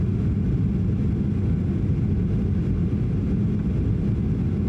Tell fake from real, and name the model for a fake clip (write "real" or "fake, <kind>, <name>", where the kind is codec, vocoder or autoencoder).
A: real